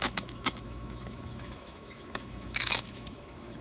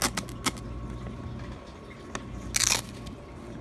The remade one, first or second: first